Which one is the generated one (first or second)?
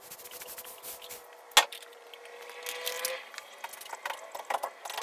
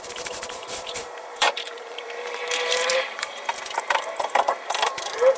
second